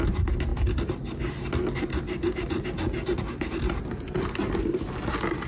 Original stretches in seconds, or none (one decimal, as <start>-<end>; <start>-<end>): 0.0-5.5